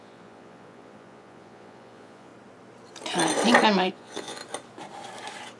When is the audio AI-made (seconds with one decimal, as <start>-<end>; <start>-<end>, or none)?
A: 0.0-2.3; 3.9-4.4